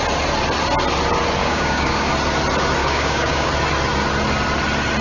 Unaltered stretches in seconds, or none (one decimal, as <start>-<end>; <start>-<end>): 0.0-1.4; 2.1-2.8; 3.5-5.0